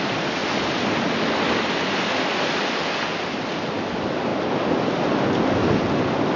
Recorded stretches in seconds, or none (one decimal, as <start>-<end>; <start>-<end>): 0.0-6.4